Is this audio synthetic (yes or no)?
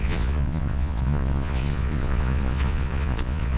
yes